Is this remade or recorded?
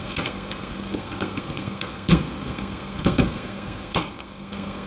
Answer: remade